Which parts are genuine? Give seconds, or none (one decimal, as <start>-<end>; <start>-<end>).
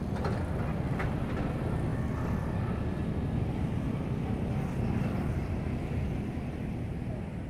1.9-5.4